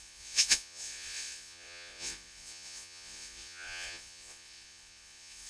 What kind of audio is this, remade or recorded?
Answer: remade